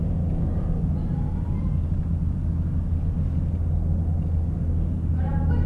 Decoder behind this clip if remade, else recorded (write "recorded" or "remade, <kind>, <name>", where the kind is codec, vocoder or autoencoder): recorded